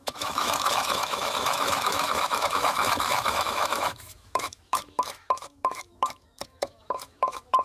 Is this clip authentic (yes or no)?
no